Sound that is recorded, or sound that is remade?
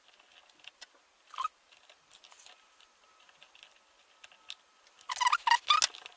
recorded